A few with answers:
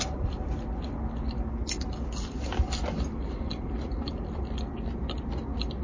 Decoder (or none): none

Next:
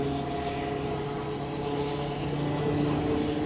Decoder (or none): none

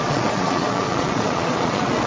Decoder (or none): vocoder, Vocos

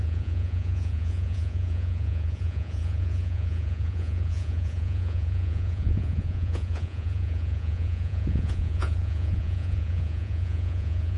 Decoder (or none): vocoder, Vocos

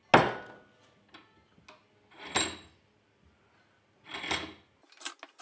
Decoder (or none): none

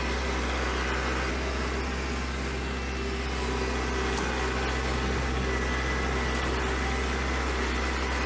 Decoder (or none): none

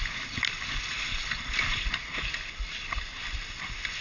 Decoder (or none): none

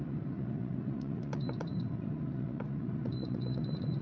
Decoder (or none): vocoder, Vocos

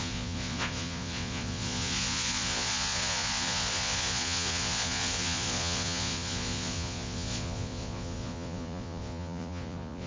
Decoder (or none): vocoder, Vocos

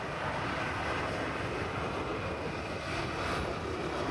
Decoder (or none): none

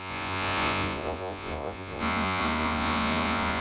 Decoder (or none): vocoder, Vocos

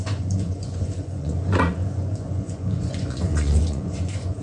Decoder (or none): vocoder, Vocos